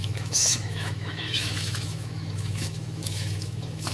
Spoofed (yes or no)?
yes